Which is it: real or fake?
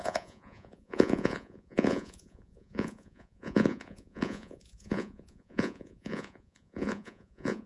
fake